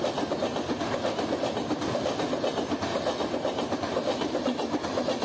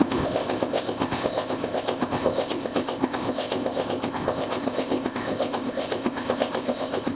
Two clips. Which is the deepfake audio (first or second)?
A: second